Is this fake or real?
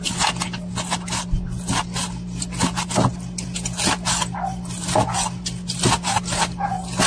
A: real